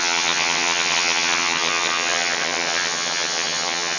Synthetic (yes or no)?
yes